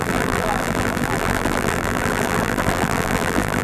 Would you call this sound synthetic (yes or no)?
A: yes